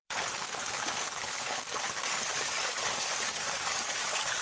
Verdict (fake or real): fake